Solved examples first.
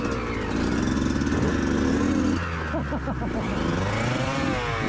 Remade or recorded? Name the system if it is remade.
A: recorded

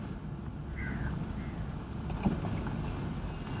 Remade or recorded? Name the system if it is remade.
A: recorded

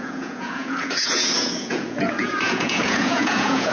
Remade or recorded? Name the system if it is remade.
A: remade, vocoder, Vocos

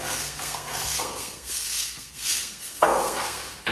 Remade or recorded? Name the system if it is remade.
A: remade, codec, SNAC